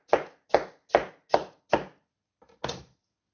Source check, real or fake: real